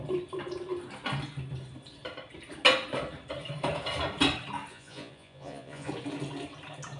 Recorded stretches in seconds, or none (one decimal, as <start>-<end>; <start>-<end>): 0.0-4.7; 5.9-7.0